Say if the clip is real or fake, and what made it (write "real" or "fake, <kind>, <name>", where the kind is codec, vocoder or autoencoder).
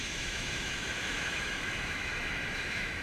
fake, autoencoder, DAC-VAE